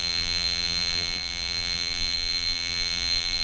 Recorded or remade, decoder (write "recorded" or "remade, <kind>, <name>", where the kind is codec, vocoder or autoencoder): remade, vocoder, BigVGAN v2